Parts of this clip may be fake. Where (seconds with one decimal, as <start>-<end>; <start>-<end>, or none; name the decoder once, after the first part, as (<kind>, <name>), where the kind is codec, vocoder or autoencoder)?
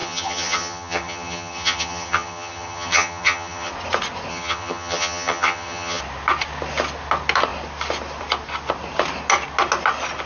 0.0-3.7 (vocoder, HiFi-GAN); 4.3-6.0